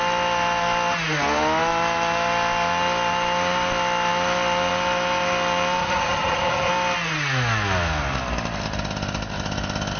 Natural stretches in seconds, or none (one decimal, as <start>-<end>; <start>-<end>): 0.0-5.8; 6.7-10.0